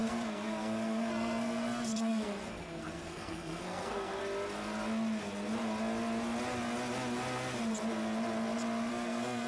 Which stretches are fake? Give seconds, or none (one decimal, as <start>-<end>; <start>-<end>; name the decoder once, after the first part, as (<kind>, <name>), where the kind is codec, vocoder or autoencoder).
0.0-4.2 (codec, SNAC); 8.9-9.5